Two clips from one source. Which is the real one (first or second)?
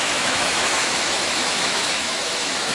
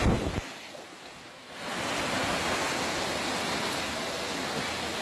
second